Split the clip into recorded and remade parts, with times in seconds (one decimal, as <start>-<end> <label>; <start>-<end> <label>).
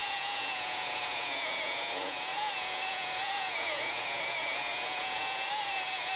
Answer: 0.0-6.2 remade